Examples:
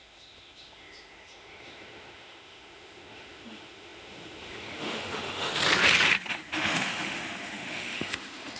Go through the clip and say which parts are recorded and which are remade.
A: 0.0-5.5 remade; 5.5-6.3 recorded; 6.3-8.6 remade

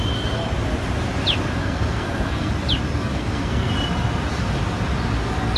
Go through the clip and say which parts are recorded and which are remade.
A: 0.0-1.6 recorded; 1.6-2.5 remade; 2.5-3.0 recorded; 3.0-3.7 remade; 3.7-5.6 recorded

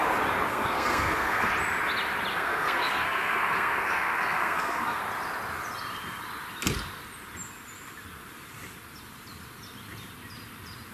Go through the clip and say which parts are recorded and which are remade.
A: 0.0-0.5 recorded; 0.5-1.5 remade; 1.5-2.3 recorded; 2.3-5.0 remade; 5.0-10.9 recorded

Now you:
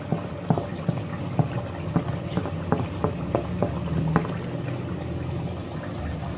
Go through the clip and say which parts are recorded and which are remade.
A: 0.0-6.4 recorded

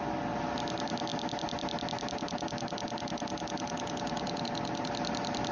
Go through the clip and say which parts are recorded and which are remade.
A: 0.0-5.5 recorded